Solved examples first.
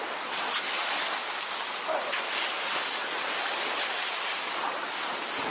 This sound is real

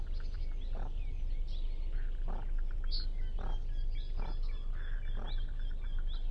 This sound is real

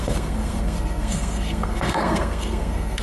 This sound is fake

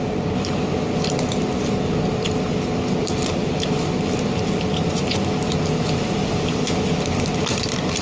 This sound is real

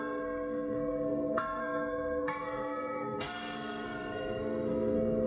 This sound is fake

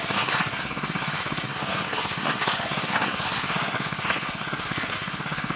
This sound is fake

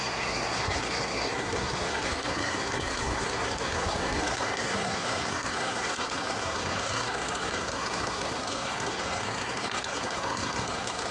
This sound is fake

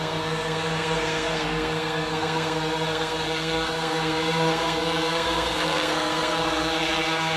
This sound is fake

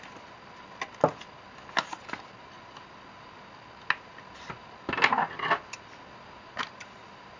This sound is real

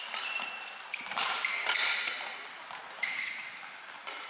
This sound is real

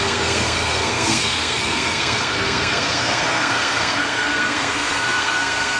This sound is fake